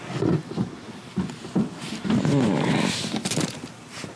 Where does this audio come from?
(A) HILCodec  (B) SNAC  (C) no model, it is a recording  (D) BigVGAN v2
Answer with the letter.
C